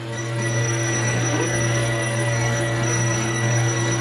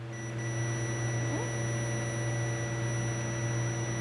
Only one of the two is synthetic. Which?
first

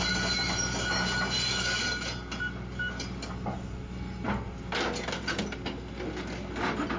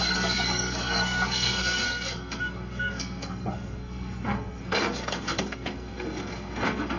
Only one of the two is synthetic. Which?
second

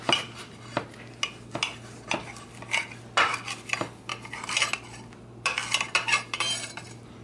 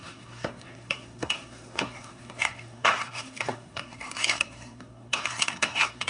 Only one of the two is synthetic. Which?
second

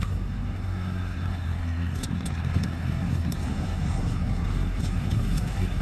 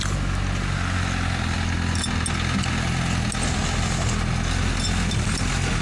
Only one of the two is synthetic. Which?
first